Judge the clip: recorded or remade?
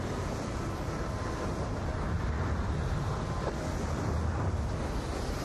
recorded